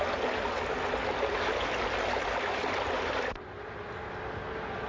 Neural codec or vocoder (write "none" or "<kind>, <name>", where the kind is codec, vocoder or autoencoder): none